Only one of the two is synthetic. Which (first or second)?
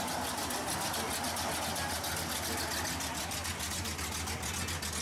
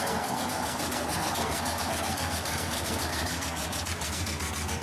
second